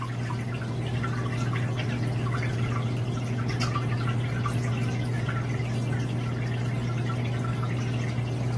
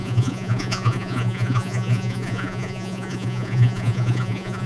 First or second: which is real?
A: first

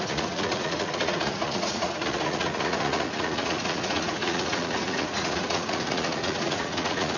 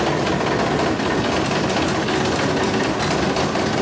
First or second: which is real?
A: second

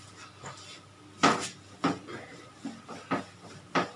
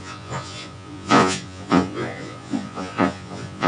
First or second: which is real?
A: first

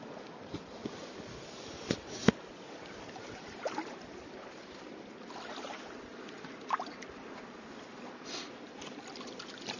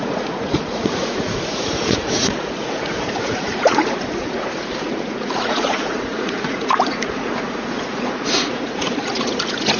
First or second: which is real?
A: first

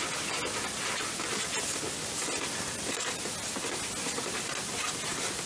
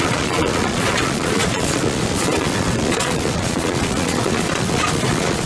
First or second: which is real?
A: first